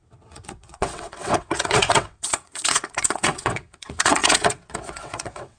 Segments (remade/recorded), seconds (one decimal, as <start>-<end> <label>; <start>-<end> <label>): 0.0-5.6 remade